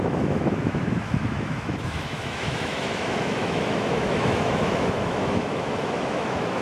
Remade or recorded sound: remade